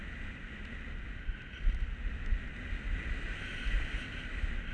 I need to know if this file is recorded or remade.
recorded